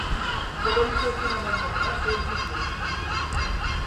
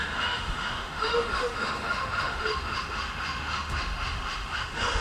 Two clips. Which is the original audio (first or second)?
first